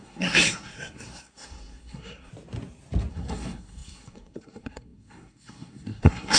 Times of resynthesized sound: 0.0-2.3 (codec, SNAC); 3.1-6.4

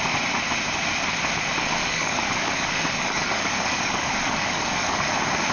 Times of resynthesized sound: 1.8-5.1 (codec, DAC)

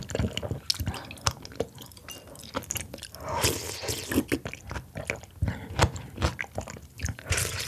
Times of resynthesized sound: 7.0-7.7 (vocoder, BigVGAN v2)

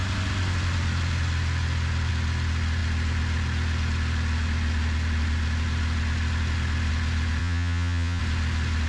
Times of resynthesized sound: 7.4-8.2 (vocoder, Vocos)

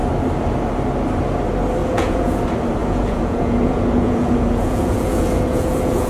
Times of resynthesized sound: 1.8-2.4 (vocoder, Vocos); 2.8-6.1

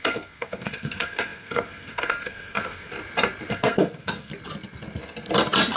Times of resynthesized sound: 0.0-2.9 (codec, SNAC); 3.5-4.3

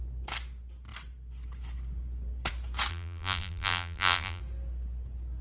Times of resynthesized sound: 2.9-4.4 (vocoder, BigVGAN v2)